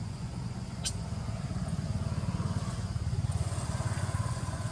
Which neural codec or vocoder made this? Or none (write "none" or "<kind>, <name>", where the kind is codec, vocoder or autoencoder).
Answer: vocoder, Vocos